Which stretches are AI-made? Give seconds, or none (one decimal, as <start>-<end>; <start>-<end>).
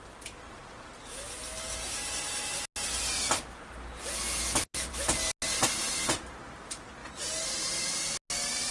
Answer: none